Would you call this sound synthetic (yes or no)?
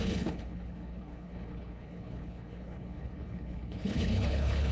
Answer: yes